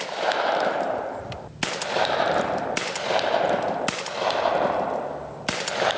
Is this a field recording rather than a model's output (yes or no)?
yes